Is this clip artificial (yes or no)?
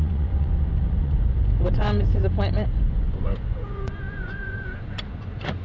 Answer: yes